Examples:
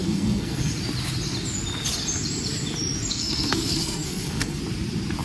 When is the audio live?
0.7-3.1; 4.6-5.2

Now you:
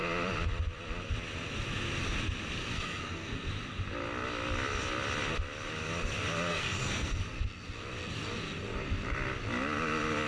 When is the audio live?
0.0-2.6; 3.5-6.5; 7.2-10.3

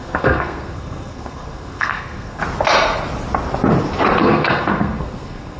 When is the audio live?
2.4-4.2

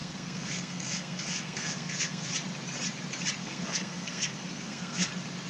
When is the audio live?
2.3-3.4; 5.1-5.5

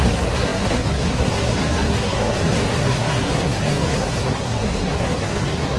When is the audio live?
none